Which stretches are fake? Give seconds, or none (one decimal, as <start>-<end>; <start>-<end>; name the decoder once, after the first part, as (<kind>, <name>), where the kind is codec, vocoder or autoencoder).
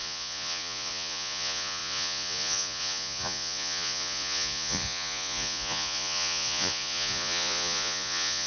0.0-8.5 (vocoder, Vocos)